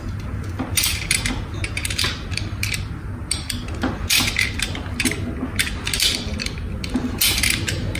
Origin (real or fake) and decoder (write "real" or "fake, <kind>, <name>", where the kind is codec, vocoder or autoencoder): real